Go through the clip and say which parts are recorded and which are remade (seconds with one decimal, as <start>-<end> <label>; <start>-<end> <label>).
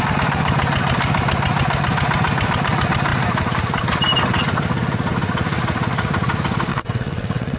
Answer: 0.0-6.7 recorded; 6.7-7.6 remade